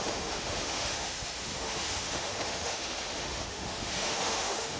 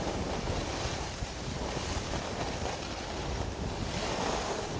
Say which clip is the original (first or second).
second